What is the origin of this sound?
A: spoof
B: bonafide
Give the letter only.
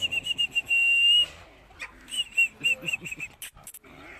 B